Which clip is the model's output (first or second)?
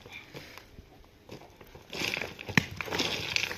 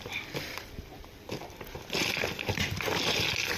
second